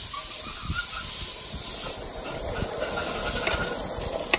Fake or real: real